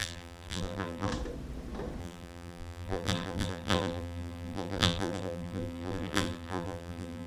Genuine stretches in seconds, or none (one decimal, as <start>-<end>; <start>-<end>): 1.1-2.0